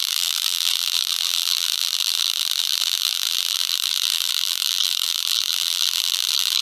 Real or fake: fake